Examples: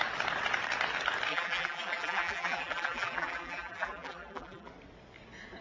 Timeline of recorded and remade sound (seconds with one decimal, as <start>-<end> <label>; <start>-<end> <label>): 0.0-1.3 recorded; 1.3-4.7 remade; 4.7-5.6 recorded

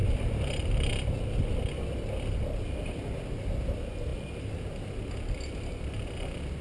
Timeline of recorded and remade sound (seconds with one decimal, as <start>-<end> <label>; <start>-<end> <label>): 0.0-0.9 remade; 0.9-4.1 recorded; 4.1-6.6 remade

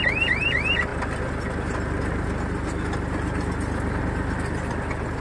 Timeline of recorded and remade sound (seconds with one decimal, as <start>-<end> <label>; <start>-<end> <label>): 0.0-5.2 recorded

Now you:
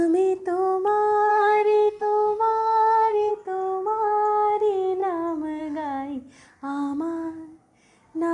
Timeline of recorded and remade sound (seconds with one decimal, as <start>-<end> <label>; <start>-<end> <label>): 0.0-1.3 recorded; 1.3-3.3 remade; 3.3-8.3 recorded

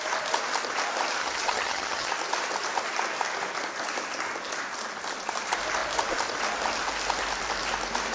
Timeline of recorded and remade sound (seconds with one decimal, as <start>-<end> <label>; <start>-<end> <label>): 0.0-1.2 recorded; 1.2-2.1 remade; 2.1-8.1 recorded

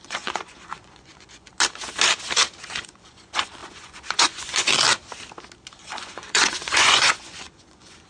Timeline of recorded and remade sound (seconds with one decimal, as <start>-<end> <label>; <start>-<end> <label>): 0.0-1.5 remade; 1.5-2.8 recorded; 2.8-4.7 remade; 4.7-5.7 recorded; 5.7-8.1 remade

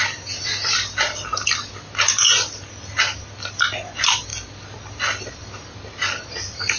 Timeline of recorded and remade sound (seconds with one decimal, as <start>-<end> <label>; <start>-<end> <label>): 0.0-6.8 recorded

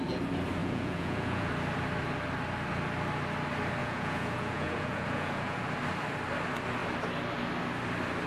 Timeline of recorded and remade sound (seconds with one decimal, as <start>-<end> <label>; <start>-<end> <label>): 0.0-0.6 recorded; 0.6-1.5 remade; 1.5-3.8 recorded; 3.8-5.6 remade; 5.6-8.3 recorded